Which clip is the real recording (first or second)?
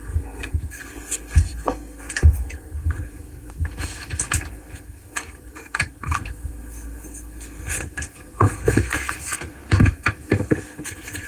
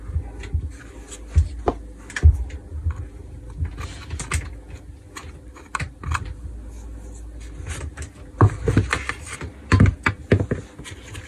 second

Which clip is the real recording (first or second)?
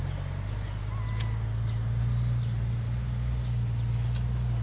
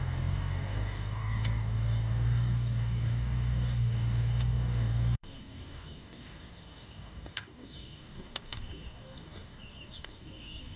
first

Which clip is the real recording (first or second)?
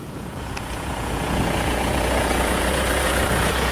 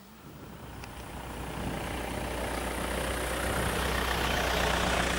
second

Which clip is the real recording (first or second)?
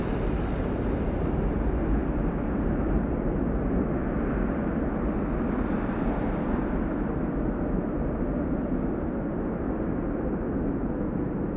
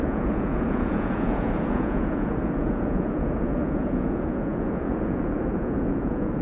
first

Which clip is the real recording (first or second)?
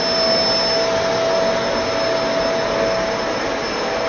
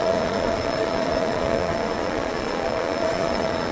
first